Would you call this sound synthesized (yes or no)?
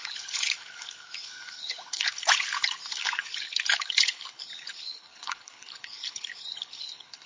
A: yes